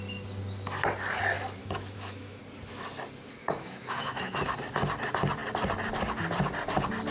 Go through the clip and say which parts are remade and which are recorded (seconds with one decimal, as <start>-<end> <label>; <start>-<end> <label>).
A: 0.0-1.6 recorded; 1.6-2.4 remade; 2.4-3.4 recorded; 3.4-4.4 remade; 4.4-7.1 recorded